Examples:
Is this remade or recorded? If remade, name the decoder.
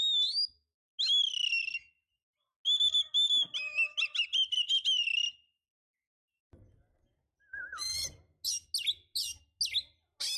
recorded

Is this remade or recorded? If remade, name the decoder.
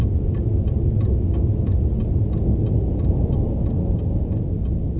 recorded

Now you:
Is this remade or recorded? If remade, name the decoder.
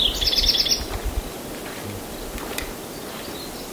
recorded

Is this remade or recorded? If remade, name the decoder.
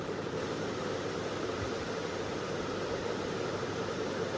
remade, vocoder, BigVGAN v2